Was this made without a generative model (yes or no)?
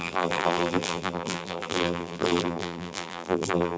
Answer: no